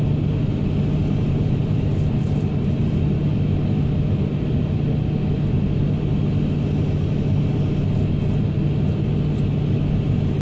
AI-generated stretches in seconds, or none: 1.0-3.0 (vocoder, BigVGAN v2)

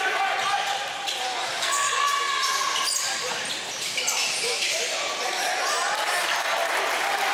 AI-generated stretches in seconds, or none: 1.6-2.1 (codec, SNAC)